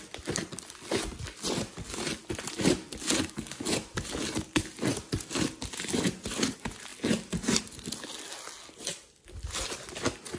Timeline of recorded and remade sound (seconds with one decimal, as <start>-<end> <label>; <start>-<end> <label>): 0.0-10.4 recorded